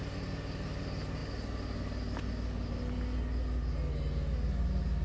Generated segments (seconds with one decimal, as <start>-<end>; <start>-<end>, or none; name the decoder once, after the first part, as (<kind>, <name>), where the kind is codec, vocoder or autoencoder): none